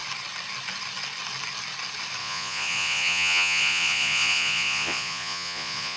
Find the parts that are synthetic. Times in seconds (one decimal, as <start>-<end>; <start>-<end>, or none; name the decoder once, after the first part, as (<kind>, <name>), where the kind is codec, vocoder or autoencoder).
2.2-6.0 (vocoder, Vocos)

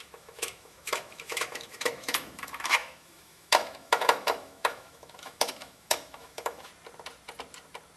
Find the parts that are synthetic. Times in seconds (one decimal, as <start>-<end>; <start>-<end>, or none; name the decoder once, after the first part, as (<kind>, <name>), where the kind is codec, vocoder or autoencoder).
0.0-6.7 (autoencoder, DAC-VAE)

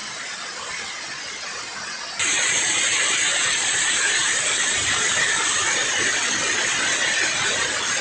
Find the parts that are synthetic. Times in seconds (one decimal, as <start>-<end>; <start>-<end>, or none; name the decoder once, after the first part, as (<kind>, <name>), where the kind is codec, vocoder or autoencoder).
2.9-5.8 (vocoder, BigVGAN v2)

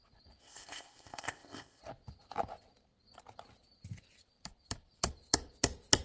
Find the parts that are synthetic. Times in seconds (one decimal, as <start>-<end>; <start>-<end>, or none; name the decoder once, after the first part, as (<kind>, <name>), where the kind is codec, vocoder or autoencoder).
0.4-1.8 (codec, ZipCodec)

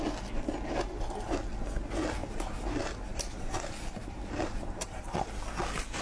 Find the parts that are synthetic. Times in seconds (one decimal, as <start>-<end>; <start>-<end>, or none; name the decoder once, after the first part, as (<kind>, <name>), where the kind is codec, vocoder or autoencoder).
2.2-5.2 (vocoder, BigVGAN v2)

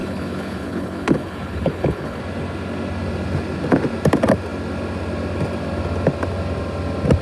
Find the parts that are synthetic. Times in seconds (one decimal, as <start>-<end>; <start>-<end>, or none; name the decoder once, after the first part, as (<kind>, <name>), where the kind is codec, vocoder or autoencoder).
0.0-2.2 (codec, HILCodec)

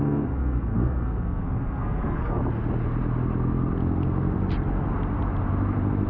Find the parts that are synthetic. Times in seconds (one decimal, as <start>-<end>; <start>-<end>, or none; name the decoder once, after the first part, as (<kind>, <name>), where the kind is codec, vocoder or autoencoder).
0.0-2.4 (codec, SNAC)